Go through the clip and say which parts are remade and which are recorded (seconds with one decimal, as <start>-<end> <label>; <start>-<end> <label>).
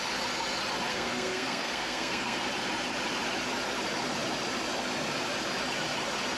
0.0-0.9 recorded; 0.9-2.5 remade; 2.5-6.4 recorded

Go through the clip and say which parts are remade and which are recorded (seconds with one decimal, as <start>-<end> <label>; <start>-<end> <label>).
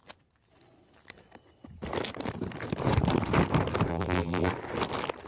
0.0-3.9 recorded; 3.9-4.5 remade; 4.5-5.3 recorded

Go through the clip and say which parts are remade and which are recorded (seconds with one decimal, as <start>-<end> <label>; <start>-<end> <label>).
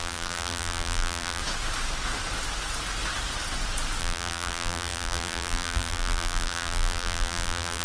0.0-1.4 remade; 1.4-4.0 recorded; 4.0-7.8 remade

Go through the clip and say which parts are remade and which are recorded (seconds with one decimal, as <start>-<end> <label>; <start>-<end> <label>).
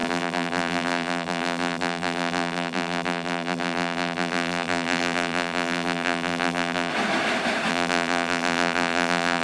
0.0-6.9 remade; 6.9-7.7 recorded; 7.7-9.4 remade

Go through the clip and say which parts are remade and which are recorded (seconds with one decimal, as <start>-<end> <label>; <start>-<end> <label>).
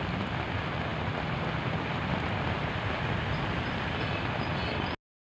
0.0-0.9 recorded; 0.9-4.1 remade; 4.1-5.3 recorded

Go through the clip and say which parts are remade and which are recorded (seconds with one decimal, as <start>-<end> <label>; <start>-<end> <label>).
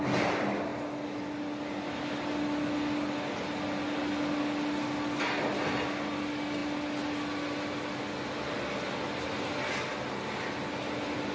0.0-11.3 recorded